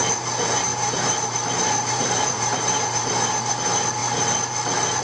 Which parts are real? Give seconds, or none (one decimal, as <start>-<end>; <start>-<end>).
0.0-0.7; 3.5-5.0